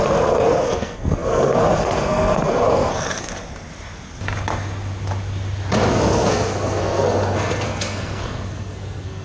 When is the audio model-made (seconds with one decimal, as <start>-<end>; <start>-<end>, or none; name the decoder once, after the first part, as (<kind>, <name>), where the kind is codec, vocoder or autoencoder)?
0.0-3.3 (codec, SNAC); 5.9-9.2